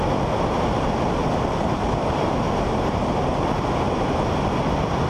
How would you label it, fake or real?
real